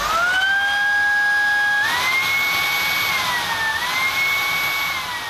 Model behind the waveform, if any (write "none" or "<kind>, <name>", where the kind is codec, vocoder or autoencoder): none